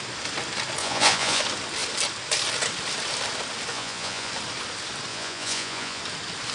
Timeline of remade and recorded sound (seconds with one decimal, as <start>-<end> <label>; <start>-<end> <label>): 0.0-0.8 recorded; 0.8-1.4 remade; 1.4-3.7 recorded; 3.7-4.3 remade; 4.3-5.1 recorded; 5.1-6.0 remade; 6.0-6.5 recorded